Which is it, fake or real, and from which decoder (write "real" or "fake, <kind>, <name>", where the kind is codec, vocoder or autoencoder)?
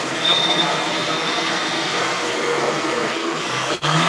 fake, codec, SNAC